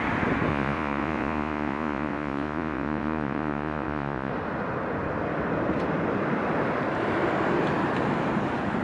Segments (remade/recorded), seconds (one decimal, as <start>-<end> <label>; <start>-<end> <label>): 0.0-0.5 recorded; 0.5-4.3 remade; 4.3-8.8 recorded